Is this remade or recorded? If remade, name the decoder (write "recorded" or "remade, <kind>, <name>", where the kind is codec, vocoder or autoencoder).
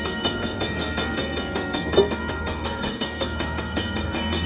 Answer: remade, codec, SNAC